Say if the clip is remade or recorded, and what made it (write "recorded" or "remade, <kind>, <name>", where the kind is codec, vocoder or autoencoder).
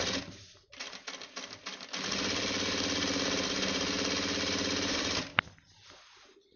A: recorded